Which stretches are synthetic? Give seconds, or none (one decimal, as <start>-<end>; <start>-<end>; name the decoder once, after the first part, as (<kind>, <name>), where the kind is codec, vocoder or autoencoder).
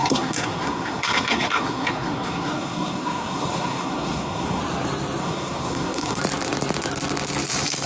0.0-4.6 (codec, SNAC); 5.2-6.2